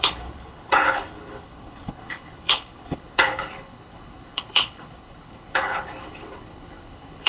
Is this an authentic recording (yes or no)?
no